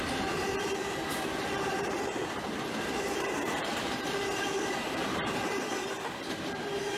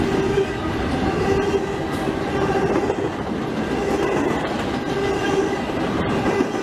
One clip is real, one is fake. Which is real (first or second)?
second